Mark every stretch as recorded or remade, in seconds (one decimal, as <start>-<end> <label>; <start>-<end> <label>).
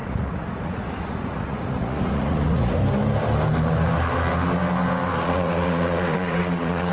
0.0-2.8 remade; 2.8-5.1 recorded; 5.1-6.9 remade